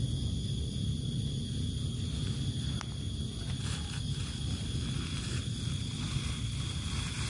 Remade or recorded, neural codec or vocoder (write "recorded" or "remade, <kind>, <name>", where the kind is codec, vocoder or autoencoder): recorded